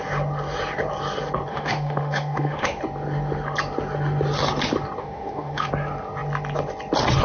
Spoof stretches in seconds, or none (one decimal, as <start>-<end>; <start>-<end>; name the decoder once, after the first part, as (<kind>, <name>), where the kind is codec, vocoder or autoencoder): 1.5-2.8 (autoencoder, DAC-VAE); 5.0-5.7